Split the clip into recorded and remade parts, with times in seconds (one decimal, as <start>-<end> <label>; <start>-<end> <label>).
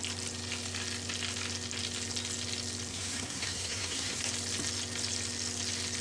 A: 0.0-2.9 recorded; 2.9-4.2 remade; 4.2-6.0 recorded